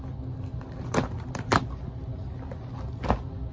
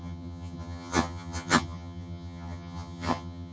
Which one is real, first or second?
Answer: first